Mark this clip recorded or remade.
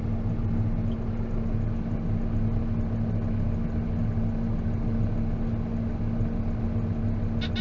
recorded